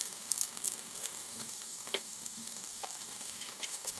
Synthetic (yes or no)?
yes